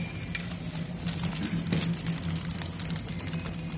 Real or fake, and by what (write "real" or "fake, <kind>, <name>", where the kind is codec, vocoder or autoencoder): real